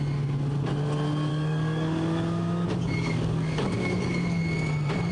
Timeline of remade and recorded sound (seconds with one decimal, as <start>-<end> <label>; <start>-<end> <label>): 0.0-1.3 recorded; 1.3-4.4 remade; 4.4-5.1 recorded